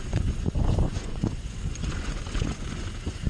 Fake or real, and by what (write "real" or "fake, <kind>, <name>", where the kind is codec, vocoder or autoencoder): fake, vocoder, Vocos